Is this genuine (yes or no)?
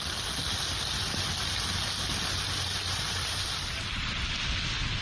yes